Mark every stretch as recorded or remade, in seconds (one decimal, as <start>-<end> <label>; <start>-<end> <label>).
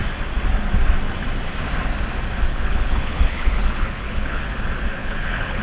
0.0-2.5 recorded; 2.5-4.4 remade; 4.4-5.0 recorded; 5.0-5.6 remade